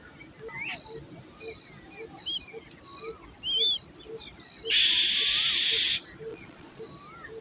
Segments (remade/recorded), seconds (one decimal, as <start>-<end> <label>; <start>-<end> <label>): 0.0-6.3 recorded; 6.3-6.8 remade; 6.8-7.4 recorded